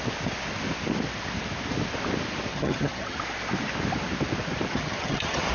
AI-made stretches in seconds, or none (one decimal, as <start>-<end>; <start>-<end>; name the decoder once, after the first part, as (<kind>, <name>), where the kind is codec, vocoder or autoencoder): 2.5-3.2 (vocoder, HiFi-GAN); 4.7-5.5